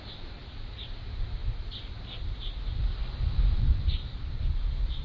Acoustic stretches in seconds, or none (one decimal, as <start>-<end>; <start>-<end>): 1.4-2.2; 3.0-3.5; 4.0-4.6